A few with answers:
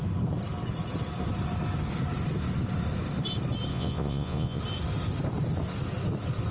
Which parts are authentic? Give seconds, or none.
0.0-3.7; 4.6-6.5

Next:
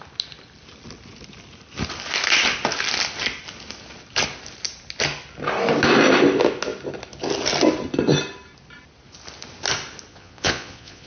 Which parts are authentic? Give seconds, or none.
0.0-10.1

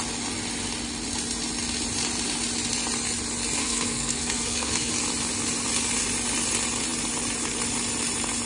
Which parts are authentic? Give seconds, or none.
0.0-3.6; 4.9-8.5

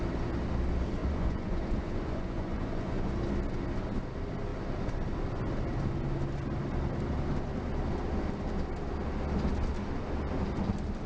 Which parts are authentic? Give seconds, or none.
0.0-1.0; 3.1-11.1